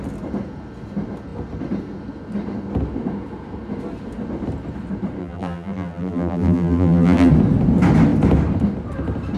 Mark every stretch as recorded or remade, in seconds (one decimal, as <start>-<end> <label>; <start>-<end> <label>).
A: 0.0-5.2 recorded; 5.2-7.3 remade; 7.3-9.4 recorded